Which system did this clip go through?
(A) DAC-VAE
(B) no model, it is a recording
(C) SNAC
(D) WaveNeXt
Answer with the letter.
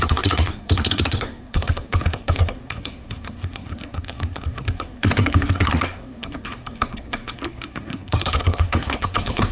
C